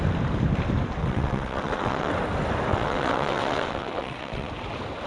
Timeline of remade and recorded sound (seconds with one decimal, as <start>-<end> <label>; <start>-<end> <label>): 0.0-1.0 recorded; 1.0-2.1 remade; 2.1-2.7 recorded; 2.7-4.5 remade; 4.5-5.1 recorded